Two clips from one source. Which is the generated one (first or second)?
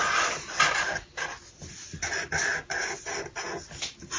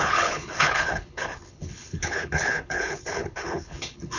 second